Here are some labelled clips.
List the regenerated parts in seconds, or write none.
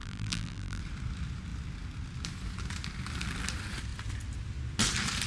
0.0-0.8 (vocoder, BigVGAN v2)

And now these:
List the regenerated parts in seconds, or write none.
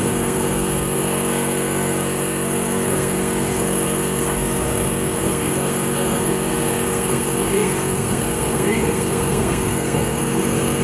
0.0-10.8 (codec, SNAC)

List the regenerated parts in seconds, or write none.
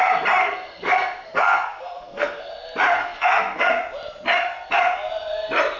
0.4-2.5 (codec, SNAC); 3.0-3.7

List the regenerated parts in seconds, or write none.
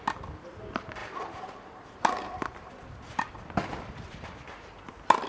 none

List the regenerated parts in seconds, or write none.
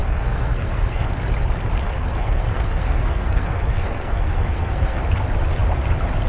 0.0-1.1 (codec, SNAC); 1.8-5.0